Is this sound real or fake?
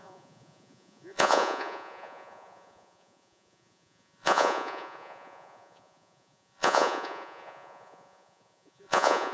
fake